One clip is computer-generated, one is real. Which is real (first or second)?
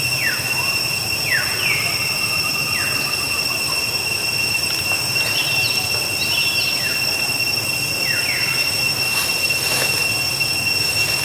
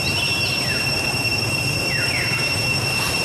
first